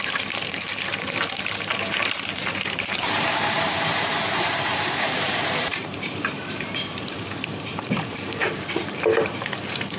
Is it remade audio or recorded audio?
remade